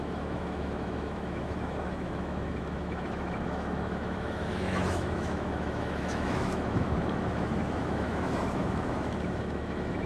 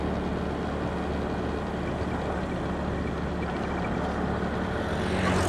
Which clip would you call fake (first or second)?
first